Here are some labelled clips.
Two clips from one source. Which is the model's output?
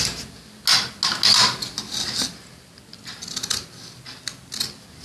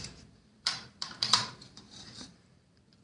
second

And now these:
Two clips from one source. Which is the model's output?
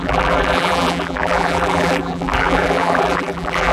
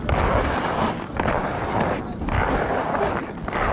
first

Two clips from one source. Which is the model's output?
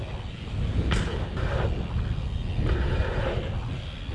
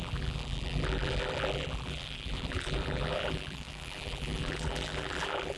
second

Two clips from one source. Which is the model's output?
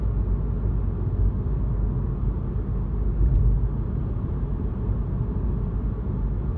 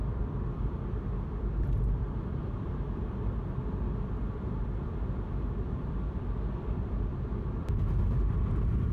second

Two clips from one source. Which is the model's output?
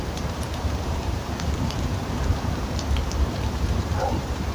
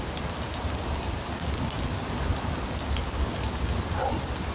first